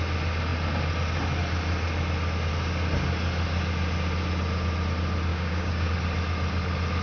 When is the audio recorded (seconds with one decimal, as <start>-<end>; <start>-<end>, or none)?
0.0-5.3; 5.9-7.0